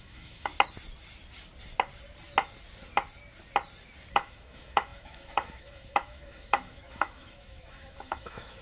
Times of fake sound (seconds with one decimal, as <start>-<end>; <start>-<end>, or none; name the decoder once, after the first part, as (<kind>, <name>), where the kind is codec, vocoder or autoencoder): 0.0-0.5 (autoencoder, DAC-VAE); 4.1-8.6